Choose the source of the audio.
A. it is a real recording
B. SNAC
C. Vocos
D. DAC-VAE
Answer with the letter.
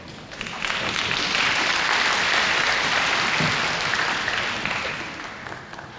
A